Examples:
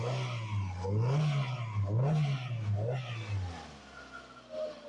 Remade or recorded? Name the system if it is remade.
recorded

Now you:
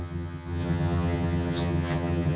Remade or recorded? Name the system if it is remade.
remade, vocoder, HiFi-GAN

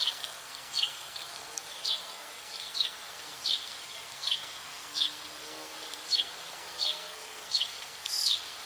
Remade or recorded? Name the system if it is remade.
remade, codec, SNAC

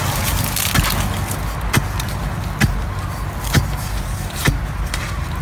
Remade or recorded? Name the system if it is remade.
recorded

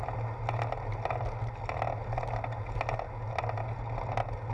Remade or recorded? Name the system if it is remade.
recorded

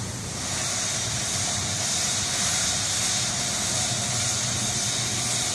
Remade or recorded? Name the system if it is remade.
recorded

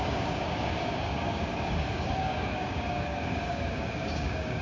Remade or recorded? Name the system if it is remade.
remade, codec, DAC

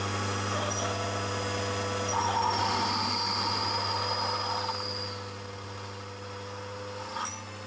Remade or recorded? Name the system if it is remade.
recorded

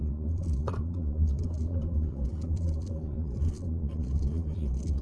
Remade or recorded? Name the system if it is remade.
remade, vocoder, Vocos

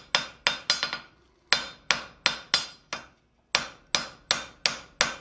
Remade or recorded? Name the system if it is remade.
recorded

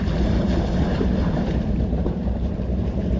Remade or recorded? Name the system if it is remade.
remade, vocoder, BigVGAN v2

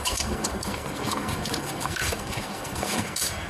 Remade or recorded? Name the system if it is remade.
remade, codec, SNAC